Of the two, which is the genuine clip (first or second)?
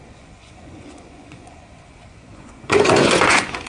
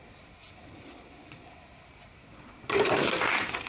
second